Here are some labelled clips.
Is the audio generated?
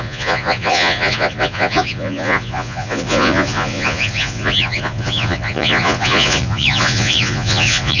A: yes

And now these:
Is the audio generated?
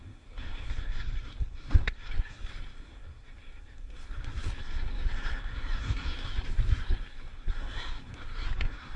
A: yes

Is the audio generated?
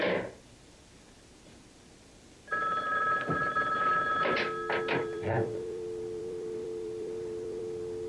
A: yes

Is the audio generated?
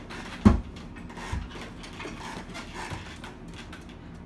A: no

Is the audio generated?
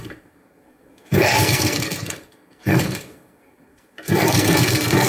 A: yes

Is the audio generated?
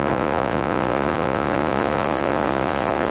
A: yes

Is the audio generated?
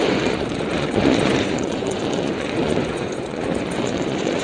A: yes